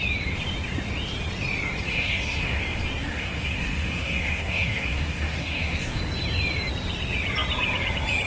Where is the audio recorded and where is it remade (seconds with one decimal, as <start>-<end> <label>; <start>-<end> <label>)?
0.0-1.9 recorded; 1.9-2.6 remade; 2.6-3.0 recorded; 3.0-6.0 remade; 6.0-8.3 recorded